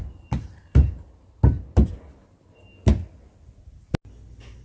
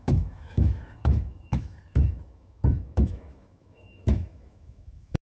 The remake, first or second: second